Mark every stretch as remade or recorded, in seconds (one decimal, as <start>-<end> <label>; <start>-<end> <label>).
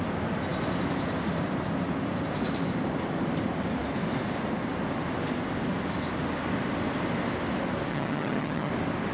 0.0-7.9 recorded; 7.9-8.7 remade; 8.7-9.1 recorded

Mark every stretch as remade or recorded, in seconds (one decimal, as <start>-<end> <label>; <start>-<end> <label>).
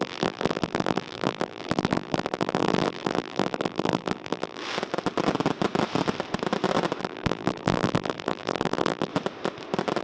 0.0-4.6 remade; 4.6-7.0 recorded; 7.0-9.1 remade; 9.1-10.0 recorded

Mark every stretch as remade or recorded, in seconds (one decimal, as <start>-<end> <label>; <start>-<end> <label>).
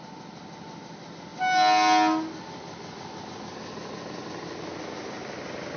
0.0-5.8 recorded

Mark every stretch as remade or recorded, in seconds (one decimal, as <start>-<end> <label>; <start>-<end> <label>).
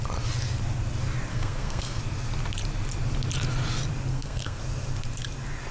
0.0-1.3 recorded; 1.3-2.0 remade; 2.0-4.1 recorded; 4.1-4.6 remade; 4.6-5.7 recorded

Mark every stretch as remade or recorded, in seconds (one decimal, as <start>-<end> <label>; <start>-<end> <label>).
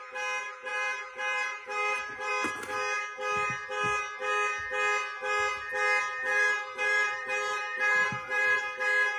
0.0-0.7 recorded; 0.7-2.3 remade; 2.3-6.3 recorded; 6.3-8.6 remade; 8.6-9.2 recorded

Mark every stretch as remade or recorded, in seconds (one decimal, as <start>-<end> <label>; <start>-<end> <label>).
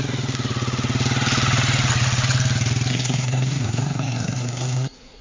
0.0-2.9 recorded; 2.9-5.2 remade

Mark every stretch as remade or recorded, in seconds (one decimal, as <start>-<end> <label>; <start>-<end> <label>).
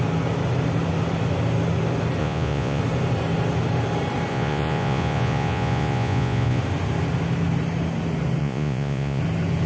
0.0-2.2 recorded; 2.2-2.8 remade; 2.8-4.3 recorded; 4.3-6.6 remade; 6.6-8.4 recorded; 8.4-9.2 remade; 9.2-9.7 recorded